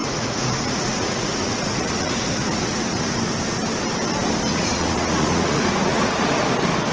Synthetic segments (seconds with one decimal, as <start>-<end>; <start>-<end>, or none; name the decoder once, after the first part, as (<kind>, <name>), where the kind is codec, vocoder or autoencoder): 0.0-3.2 (vocoder, Vocos); 4.5-6.4